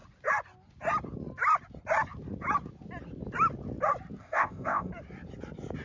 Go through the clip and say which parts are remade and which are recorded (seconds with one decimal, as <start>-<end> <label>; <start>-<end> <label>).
0.0-4.2 recorded; 4.2-4.9 remade; 4.9-5.8 recorded